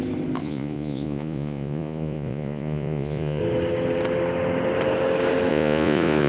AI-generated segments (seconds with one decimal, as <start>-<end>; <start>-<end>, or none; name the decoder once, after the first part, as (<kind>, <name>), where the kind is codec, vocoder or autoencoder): 0.4-3.4 (vocoder, Vocos); 5.5-6.3